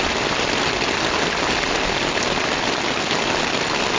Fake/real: real